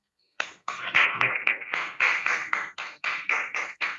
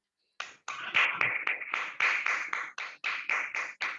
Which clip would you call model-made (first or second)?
first